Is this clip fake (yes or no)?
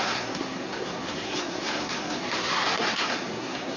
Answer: yes